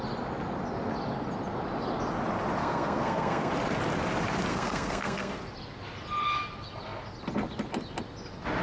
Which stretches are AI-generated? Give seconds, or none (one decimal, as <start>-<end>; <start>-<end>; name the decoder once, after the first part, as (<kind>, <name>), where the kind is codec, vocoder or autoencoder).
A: 2.6-3.5 (codec, SNAC); 4.5-5.3